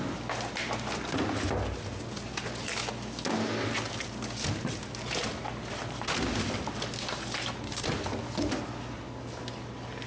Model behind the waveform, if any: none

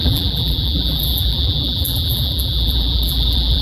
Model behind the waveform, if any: vocoder, BigVGAN v2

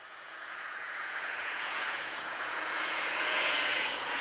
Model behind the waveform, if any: vocoder, Vocos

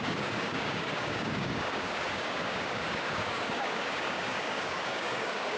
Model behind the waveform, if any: codec, DAC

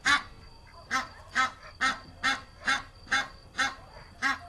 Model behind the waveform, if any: none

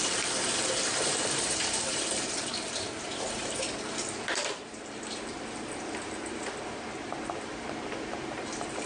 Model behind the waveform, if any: vocoder, BigVGAN v2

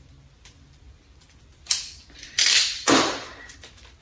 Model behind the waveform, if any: vocoder, BigVGAN v2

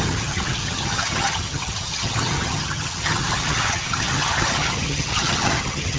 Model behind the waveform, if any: vocoder, HiFi-GAN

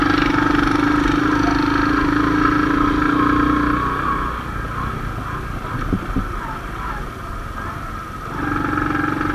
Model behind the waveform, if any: none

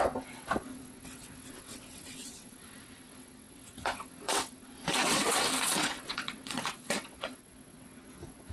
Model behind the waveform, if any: vocoder, WaveNeXt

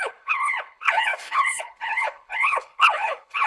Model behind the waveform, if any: codec, HILCodec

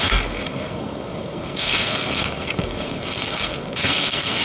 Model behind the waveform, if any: codec, SNAC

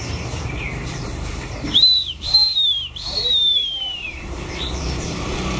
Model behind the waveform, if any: vocoder, BigVGAN v2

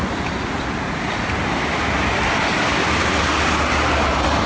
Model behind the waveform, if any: none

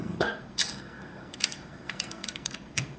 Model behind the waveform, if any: codec, SNAC